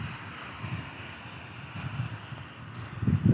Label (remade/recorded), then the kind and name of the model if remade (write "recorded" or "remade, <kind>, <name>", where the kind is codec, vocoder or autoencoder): recorded